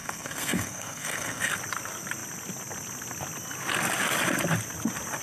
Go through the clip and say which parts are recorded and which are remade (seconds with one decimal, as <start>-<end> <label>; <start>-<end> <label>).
0.0-1.5 remade; 1.5-5.2 recorded